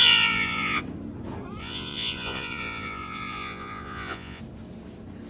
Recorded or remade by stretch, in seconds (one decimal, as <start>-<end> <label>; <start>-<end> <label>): 0.0-0.8 remade; 0.8-1.6 recorded; 1.6-4.4 remade; 4.4-5.3 recorded